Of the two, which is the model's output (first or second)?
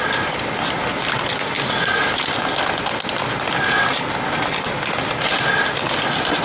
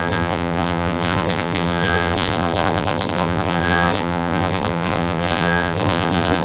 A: second